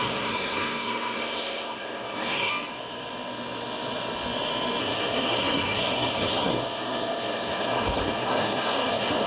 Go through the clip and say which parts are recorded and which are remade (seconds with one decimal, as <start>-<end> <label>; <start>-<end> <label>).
0.0-2.5 remade; 2.5-4.8 recorded; 4.8-9.3 remade